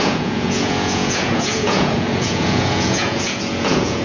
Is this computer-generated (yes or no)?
yes